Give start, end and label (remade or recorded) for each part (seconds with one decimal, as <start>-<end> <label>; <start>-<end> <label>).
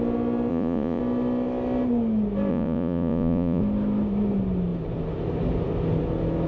0.0-0.5 recorded; 0.5-1.0 remade; 1.0-2.5 recorded; 2.5-3.6 remade; 3.6-6.5 recorded